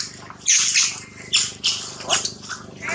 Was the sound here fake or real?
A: real